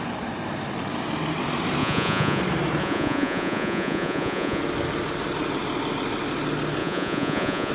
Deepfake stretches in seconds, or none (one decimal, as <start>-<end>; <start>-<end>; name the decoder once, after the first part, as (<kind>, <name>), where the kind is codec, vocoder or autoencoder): 1.8-2.4 (vocoder, Vocos); 2.8-4.6; 6.8-7.7